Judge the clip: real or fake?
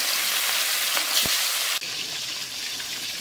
fake